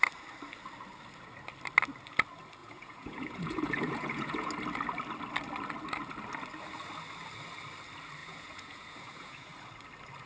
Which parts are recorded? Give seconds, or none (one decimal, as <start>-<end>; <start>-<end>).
0.0-2.6; 4.5-8.2; 9.5-10.3